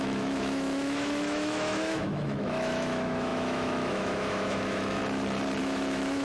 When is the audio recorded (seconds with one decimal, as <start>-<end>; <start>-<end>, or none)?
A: 5.0-5.6